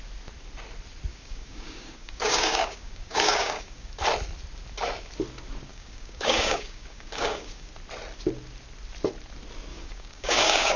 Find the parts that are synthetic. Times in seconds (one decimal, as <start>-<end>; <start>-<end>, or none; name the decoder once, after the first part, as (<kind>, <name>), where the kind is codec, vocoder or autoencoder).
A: 1.1-3.9 (codec, DAC); 5.7-7.7; 9.7-10.8